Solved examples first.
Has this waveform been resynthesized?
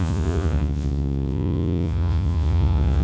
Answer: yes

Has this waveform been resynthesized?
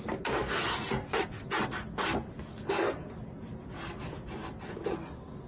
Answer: no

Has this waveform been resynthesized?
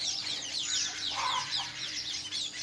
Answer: yes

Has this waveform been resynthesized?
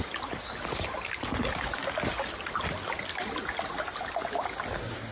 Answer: no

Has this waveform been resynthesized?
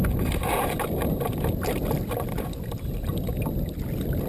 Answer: no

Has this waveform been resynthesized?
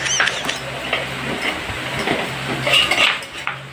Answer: no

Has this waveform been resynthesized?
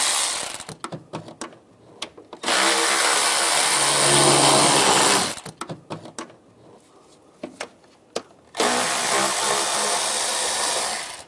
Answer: no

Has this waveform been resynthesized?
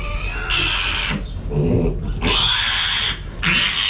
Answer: no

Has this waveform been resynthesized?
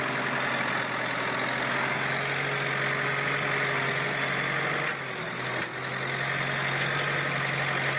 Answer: no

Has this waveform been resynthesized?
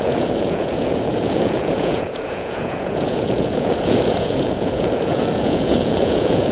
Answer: yes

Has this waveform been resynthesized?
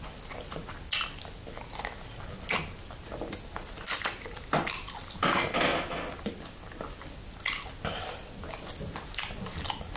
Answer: no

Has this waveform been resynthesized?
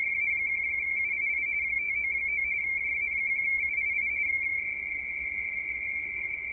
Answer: yes